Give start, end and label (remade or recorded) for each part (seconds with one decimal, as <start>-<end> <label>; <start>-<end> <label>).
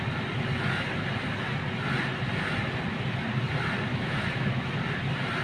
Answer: 0.0-3.9 recorded; 3.9-4.7 remade; 4.7-5.4 recorded